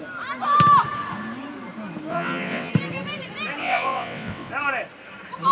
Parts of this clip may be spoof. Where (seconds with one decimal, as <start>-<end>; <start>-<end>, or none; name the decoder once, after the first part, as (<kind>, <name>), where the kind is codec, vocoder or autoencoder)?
2.1-2.7 (vocoder, WaveNeXt); 3.6-4.5